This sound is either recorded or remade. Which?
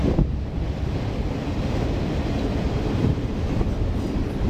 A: recorded